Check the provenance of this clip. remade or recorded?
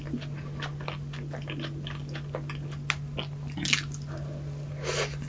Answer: recorded